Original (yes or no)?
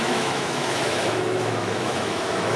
no